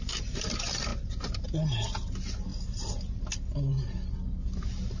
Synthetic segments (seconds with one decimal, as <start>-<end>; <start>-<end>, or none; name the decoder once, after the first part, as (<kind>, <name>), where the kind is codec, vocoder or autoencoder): none